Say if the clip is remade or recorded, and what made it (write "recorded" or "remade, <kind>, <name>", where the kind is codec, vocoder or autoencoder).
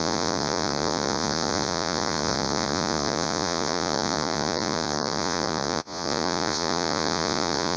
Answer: remade, vocoder, Vocos